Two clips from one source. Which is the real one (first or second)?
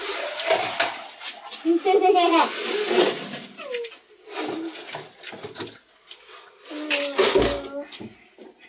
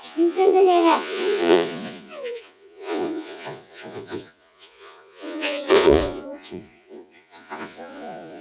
first